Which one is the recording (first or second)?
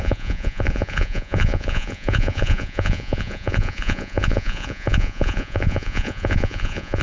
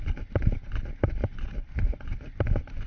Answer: second